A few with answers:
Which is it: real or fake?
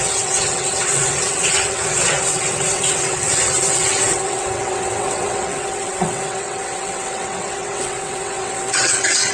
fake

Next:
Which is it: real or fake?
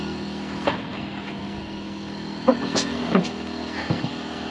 fake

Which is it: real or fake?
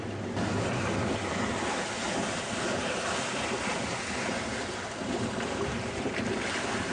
fake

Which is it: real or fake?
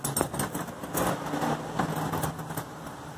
real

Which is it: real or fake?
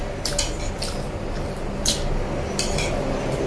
real